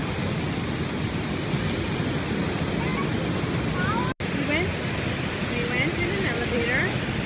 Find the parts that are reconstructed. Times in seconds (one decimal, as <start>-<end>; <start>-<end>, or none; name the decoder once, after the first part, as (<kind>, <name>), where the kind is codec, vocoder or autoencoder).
none